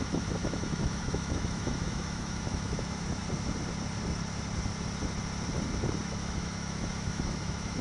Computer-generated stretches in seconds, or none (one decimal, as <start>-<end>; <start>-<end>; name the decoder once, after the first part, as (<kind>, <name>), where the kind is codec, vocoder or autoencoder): 0.0-3.2 (autoencoder, DAC-VAE); 6.0-7.8